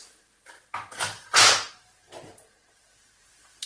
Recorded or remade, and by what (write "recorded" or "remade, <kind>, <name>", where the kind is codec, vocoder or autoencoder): remade, vocoder, BigVGAN v2